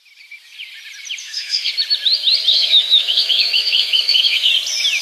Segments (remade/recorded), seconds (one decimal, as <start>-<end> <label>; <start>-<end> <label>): 0.0-1.2 recorded; 1.2-1.7 remade; 1.7-2.5 recorded; 2.5-4.5 remade; 4.5-5.0 recorded